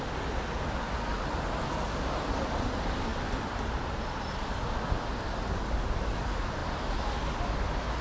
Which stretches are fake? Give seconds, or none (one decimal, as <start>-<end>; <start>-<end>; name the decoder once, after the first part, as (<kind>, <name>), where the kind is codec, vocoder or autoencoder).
none